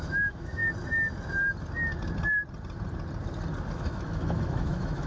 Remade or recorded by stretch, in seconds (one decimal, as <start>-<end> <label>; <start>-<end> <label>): 0.0-0.6 remade; 0.6-3.7 recorded; 3.7-5.1 remade